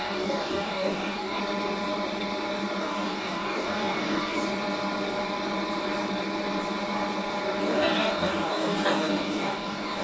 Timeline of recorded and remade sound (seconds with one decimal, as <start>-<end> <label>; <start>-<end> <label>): 0.0-1.4 remade; 1.4-2.8 recorded; 2.8-4.4 remade; 4.4-7.6 recorded; 7.6-10.0 remade